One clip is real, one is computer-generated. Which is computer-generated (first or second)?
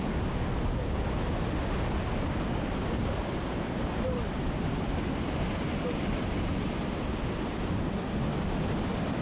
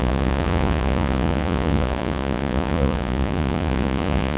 second